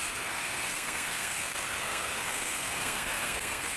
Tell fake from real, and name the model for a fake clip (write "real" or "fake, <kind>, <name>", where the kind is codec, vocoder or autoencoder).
fake, codec, SNAC